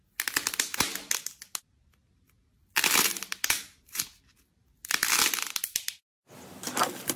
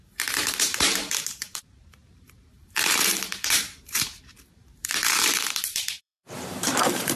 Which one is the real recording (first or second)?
first